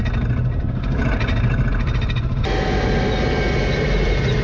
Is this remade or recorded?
recorded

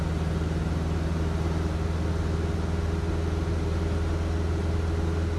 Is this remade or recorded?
recorded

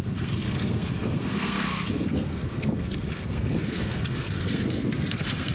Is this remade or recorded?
remade